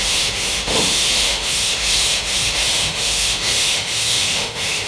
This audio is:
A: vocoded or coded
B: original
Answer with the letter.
A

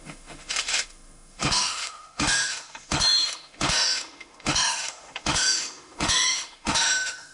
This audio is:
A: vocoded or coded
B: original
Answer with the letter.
A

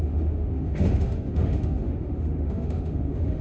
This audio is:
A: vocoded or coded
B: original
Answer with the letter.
A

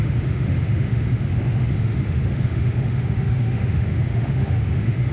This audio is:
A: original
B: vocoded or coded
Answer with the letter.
B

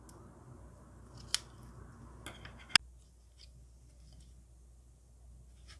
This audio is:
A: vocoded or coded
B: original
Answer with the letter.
B